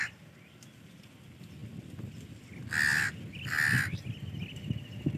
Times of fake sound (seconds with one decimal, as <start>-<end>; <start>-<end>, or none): none